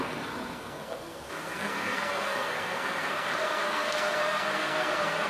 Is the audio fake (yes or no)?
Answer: yes